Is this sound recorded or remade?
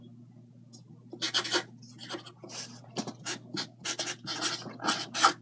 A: recorded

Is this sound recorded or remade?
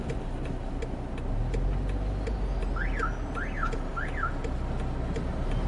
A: recorded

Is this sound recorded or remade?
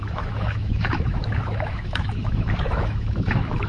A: remade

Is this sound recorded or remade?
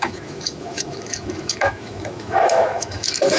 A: remade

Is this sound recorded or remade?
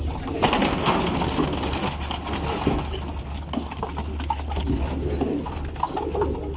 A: recorded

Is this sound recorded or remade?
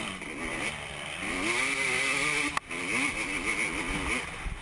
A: recorded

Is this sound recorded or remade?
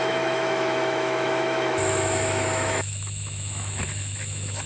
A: remade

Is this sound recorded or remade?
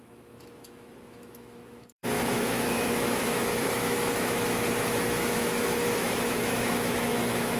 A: remade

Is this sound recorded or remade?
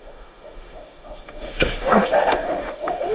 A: remade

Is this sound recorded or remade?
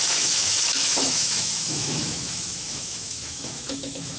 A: remade